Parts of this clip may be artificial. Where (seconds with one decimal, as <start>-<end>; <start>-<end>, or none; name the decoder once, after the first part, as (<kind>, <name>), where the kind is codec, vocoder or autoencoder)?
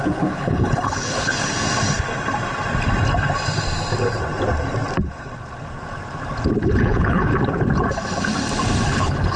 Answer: 0.0-1.5 (codec, HILCodec); 6.8-7.3; 8.9-9.4